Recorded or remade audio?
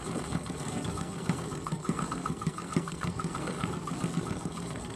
remade